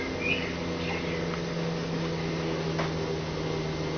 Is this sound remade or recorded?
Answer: recorded